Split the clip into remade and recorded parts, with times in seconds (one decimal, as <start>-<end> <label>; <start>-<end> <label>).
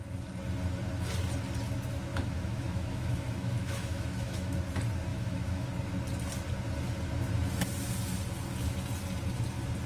0.0-2.1 recorded; 2.1-4.6 remade; 4.6-5.1 recorded; 5.1-5.7 remade; 5.7-9.9 recorded